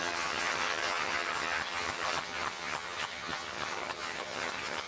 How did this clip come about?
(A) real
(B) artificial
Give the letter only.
B